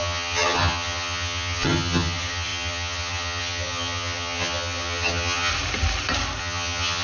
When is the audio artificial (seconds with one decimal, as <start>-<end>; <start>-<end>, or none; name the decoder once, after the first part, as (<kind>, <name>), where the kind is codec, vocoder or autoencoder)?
0.0-5.5 (vocoder, HiFi-GAN); 6.4-7.0